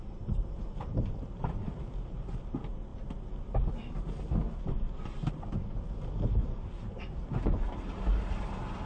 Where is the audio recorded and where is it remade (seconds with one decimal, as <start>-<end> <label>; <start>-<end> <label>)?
0.0-8.9 recorded

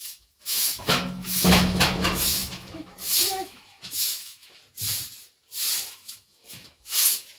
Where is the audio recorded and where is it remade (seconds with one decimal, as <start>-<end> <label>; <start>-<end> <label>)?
0.0-4.6 remade; 4.6-5.9 recorded; 5.9-7.4 remade